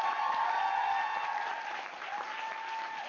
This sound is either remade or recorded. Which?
recorded